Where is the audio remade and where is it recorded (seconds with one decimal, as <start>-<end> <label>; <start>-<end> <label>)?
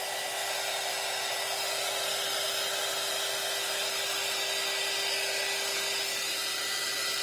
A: 0.0-7.2 recorded